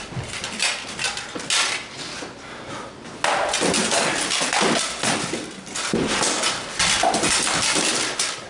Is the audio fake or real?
real